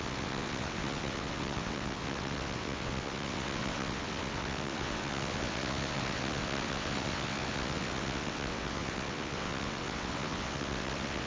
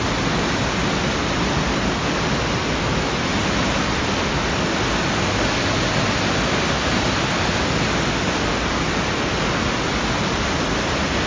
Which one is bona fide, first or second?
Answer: second